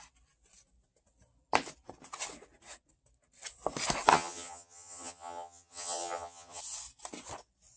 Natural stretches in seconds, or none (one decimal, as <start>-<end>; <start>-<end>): 0.0-4.1; 6.6-7.8